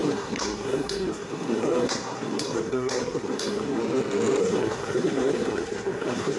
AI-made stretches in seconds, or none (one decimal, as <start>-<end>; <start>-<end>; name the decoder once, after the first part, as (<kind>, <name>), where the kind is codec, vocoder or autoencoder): 0.0-3.8 (codec, SNAC); 4.4-6.4